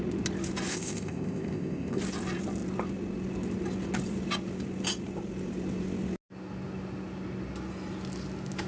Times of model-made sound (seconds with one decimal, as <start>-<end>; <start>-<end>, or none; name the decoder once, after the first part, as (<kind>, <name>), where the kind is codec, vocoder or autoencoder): 0.7-2.0 (codec, ZipCodec)